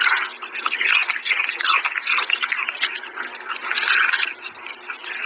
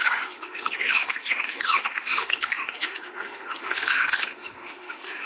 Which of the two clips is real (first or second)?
first